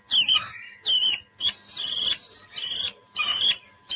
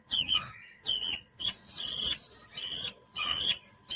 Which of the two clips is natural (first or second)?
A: first